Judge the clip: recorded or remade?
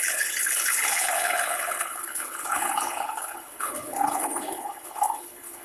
remade